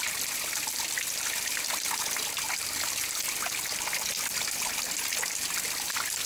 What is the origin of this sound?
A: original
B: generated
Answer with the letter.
A